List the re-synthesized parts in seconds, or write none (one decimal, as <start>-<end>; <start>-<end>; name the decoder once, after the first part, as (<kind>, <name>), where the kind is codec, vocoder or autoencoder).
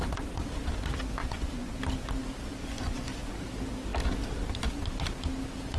1.2-1.8 (vocoder, Vocos); 2.6-3.3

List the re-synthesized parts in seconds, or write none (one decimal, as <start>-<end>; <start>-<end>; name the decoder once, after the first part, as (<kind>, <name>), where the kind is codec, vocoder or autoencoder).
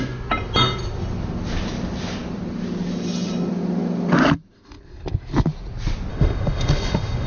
6.1-7.3 (autoencoder, DAC-VAE)